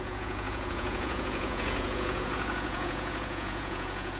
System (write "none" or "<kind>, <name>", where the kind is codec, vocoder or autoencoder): vocoder, Vocos